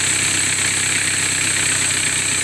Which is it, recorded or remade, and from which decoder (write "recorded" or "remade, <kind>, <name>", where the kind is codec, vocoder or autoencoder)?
recorded